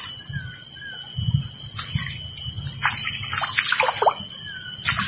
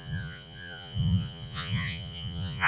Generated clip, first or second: second